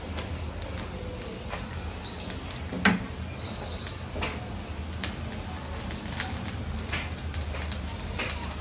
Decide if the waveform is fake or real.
real